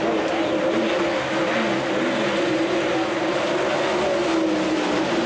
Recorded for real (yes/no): yes